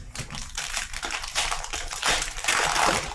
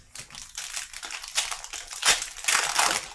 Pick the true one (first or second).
second